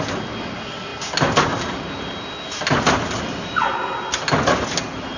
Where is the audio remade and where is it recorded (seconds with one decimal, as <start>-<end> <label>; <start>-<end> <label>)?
0.0-5.2 recorded